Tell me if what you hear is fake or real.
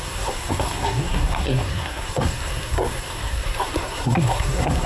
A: fake